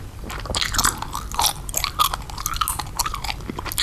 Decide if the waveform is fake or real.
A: real